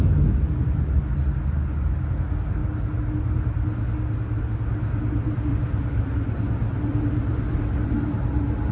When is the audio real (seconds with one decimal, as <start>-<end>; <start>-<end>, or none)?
0.0-5.5; 7.7-8.7